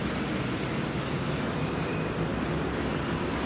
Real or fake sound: real